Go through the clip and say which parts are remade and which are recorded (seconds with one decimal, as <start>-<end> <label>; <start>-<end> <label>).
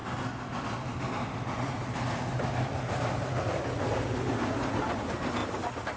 0.0-6.0 recorded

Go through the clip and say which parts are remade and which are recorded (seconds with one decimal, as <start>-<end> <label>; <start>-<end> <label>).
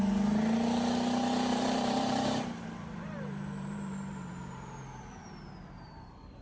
0.0-1.5 recorded; 1.5-4.8 remade; 4.8-6.4 recorded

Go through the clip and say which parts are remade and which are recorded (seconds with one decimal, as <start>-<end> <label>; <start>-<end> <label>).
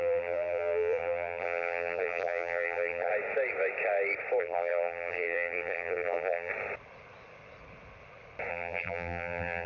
0.0-3.1 remade; 3.1-4.4 recorded; 4.4-6.5 remade; 6.5-8.5 recorded; 8.5-9.7 remade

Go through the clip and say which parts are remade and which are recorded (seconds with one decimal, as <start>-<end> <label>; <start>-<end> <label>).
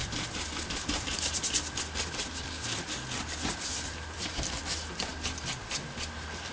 0.0-0.6 recorded; 0.6-5.1 remade; 5.1-6.5 recorded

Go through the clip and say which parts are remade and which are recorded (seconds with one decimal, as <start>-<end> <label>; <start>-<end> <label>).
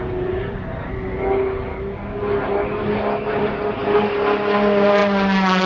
0.0-5.7 recorded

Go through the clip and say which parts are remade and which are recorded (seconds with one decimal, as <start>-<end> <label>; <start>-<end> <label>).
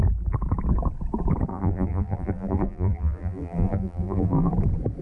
0.0-1.5 recorded; 1.5-4.5 remade; 4.5-5.0 recorded